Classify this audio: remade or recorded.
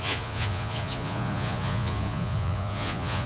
remade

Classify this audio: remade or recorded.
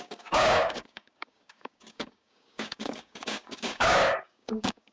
remade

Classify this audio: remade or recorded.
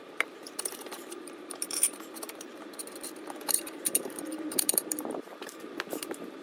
remade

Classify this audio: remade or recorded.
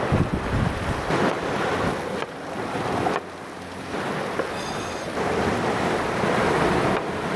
recorded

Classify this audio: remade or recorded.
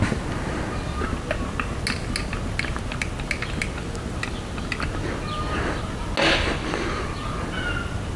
recorded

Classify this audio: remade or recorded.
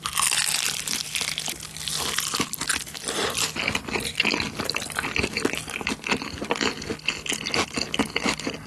recorded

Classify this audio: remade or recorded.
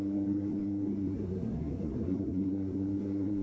remade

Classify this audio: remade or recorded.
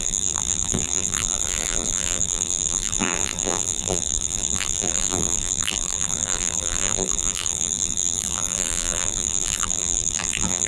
remade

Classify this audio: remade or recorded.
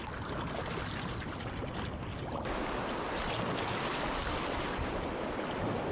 recorded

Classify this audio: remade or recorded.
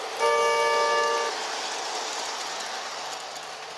recorded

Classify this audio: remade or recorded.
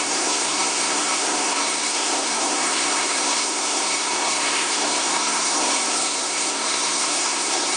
remade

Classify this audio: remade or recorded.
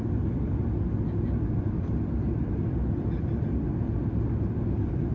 remade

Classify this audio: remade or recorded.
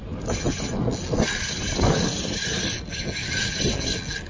recorded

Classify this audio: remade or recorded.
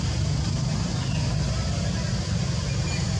recorded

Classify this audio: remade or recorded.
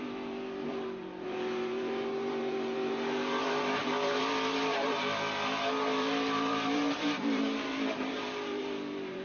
remade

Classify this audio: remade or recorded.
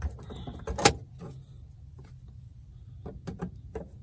recorded